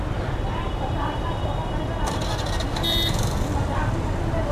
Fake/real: real